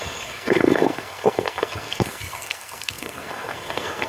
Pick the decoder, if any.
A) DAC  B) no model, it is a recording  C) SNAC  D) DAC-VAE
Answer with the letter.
C